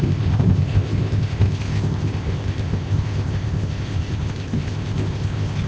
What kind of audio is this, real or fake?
fake